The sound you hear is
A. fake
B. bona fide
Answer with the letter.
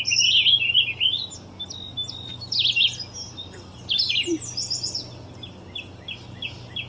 B